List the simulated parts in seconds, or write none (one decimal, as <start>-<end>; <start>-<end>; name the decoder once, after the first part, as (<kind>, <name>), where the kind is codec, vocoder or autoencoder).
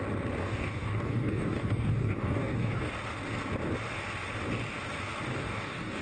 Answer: 0.4-2.9 (codec, DAC); 5.3-6.0